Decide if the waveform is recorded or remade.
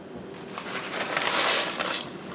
recorded